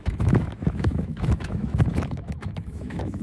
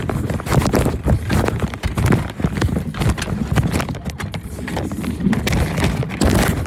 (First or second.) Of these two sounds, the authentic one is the second